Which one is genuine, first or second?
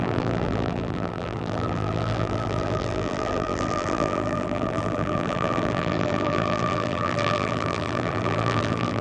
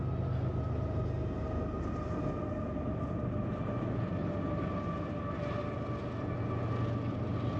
second